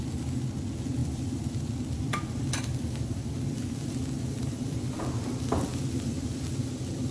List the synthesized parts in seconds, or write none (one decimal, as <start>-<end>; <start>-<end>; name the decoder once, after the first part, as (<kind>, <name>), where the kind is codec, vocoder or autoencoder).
1.0-5.0 (vocoder, BigVGAN v2); 5.7-7.1